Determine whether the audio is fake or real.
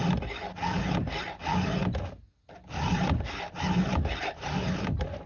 real